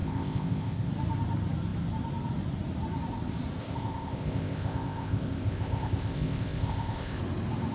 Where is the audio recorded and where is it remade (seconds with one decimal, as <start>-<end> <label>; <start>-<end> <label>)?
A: 0.0-0.9 remade; 0.9-3.6 recorded; 3.6-7.2 remade; 7.2-7.7 recorded